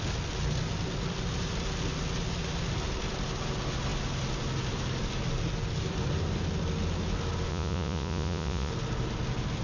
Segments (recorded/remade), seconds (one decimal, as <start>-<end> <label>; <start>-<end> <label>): 0.0-7.5 recorded; 7.5-8.7 remade; 8.7-9.6 recorded